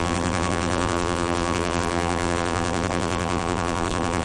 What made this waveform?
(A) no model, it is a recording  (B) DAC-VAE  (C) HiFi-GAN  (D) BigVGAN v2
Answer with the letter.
D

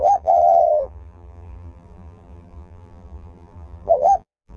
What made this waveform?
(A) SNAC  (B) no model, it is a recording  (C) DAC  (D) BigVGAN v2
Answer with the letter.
D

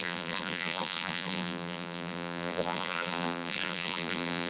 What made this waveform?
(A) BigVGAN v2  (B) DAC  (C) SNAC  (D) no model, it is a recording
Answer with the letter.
A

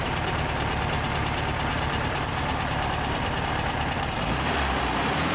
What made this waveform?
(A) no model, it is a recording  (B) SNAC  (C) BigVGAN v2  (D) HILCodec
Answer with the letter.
C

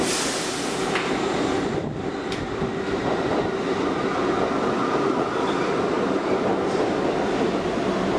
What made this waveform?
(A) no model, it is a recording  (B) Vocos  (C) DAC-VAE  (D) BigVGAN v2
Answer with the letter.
D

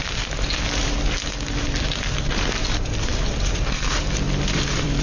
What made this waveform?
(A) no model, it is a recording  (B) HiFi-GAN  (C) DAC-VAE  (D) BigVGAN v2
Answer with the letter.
D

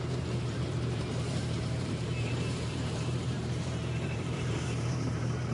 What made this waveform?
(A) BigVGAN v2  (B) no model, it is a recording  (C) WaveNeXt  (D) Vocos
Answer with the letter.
A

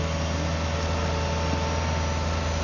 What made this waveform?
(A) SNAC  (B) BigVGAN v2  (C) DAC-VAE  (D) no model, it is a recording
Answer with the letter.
D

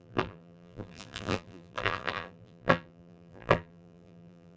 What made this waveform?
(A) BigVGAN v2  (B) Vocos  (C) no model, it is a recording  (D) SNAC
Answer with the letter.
A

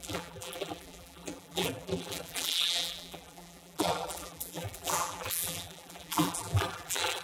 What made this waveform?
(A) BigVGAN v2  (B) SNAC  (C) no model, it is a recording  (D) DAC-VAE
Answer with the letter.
A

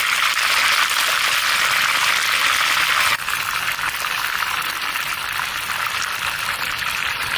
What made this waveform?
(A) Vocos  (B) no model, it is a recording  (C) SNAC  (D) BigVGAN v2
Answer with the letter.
B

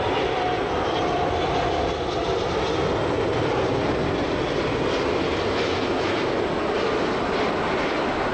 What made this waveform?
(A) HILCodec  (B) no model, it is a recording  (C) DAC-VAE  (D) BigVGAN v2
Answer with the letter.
B